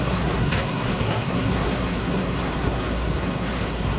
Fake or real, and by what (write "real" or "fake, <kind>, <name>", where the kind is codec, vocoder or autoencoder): fake, codec, SNAC